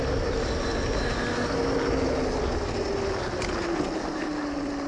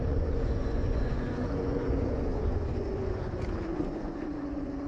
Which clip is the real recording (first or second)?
first